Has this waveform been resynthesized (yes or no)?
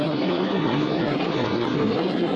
yes